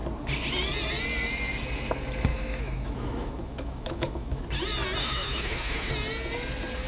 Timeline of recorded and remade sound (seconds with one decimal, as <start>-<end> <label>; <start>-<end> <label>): 0.0-2.3 recorded; 2.3-4.4 remade; 4.4-5.0 recorded; 5.0-5.9 remade; 5.9-6.9 recorded